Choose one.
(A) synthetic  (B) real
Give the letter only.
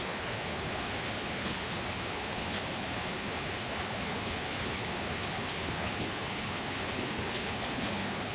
A